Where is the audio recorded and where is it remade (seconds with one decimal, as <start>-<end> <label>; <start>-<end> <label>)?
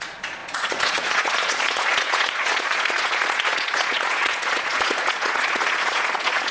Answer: 0.0-6.5 remade